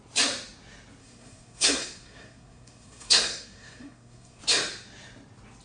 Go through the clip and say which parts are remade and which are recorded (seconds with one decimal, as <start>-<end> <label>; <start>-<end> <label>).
0.0-1.0 recorded; 1.0-4.4 remade; 4.4-5.6 recorded